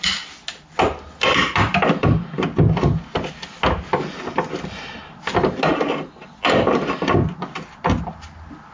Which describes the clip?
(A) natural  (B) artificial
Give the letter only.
A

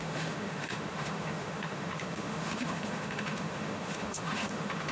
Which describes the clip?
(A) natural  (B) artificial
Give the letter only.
B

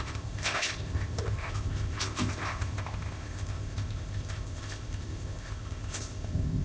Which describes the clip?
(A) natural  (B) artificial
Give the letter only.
B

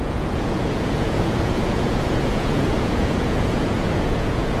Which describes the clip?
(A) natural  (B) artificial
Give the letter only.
B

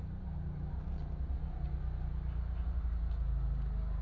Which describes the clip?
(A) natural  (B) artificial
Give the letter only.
A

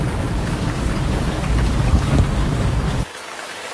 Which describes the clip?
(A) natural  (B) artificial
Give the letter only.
B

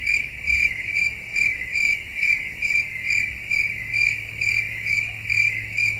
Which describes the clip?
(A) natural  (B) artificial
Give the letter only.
B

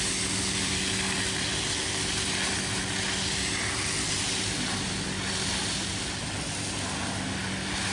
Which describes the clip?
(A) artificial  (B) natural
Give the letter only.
B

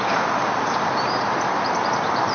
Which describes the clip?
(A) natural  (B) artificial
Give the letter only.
B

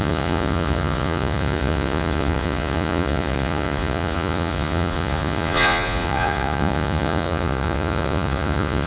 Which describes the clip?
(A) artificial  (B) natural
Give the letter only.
A